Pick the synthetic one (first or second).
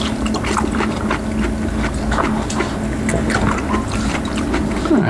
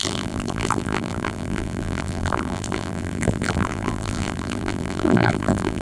second